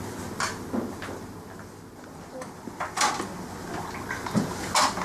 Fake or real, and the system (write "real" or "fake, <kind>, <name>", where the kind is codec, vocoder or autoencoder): real